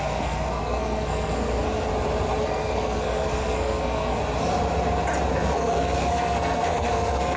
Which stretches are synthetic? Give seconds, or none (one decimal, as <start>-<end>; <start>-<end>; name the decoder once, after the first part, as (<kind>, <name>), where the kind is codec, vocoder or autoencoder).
0.0-1.9 (codec, SNAC); 2.4-4.2; 5.3-7.4